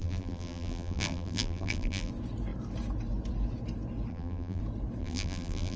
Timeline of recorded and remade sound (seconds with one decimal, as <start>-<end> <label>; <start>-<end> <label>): 0.0-2.1 remade; 2.1-4.1 recorded; 4.1-4.6 remade; 4.6-5.0 recorded; 5.0-5.8 remade